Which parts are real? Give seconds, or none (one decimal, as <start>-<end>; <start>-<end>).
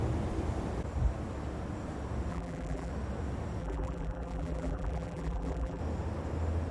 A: 0.0-2.3; 2.9-3.6; 5.8-6.7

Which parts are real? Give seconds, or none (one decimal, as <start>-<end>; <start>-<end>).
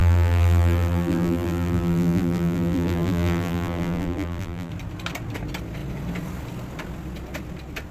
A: 4.7-7.9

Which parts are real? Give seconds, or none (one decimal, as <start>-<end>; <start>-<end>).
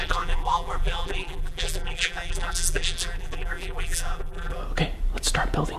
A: 4.6-5.8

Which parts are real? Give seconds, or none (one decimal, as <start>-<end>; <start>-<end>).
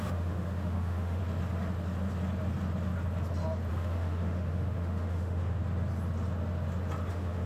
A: 1.2-3.7; 5.6-7.1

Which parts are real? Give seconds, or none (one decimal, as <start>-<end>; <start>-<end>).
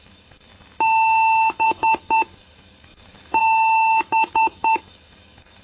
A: 0.5-1.6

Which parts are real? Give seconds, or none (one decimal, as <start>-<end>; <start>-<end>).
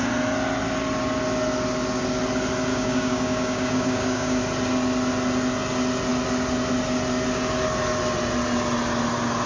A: 0.0-2.7; 4.4-9.5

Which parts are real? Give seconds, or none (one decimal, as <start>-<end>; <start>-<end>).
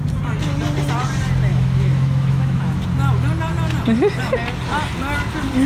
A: 0.0-1.5; 2.8-5.7